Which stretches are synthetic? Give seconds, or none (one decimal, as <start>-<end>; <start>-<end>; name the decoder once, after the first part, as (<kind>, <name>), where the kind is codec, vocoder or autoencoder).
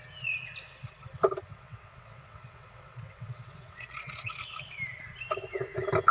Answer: 1.5-4.4 (vocoder, WaveNeXt)